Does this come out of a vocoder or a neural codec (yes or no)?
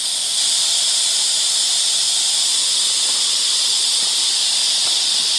no